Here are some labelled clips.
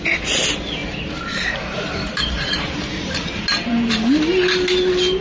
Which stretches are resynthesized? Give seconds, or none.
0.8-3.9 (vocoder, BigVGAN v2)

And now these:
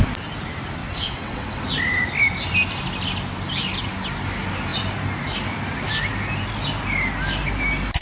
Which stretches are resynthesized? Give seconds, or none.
0.8-1.6 (vocoder, WaveNeXt)